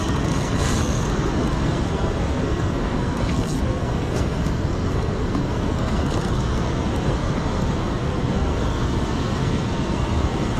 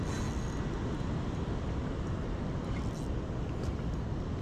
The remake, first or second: first